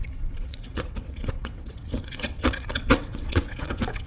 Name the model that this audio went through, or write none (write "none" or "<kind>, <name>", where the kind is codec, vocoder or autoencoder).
vocoder, WaveNeXt